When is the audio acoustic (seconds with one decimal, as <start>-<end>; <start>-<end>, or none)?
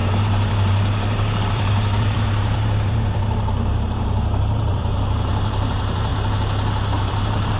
6.1-7.0